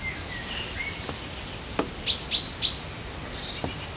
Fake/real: real